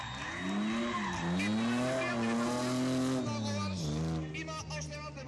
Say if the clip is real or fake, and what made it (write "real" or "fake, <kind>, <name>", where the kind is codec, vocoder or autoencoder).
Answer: real